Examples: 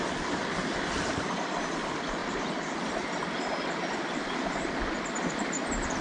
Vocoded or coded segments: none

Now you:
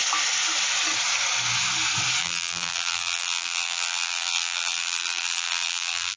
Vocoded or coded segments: 2.2-6.2 (vocoder, BigVGAN v2)

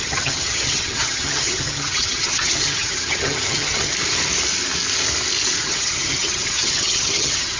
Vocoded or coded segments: 0.0-3.9 (vocoder, HiFi-GAN); 5.6-7.6

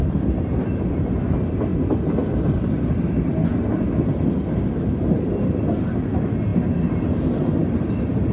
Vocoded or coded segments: 0.0-0.9 (vocoder, BigVGAN v2); 1.7-2.9; 7.6-8.3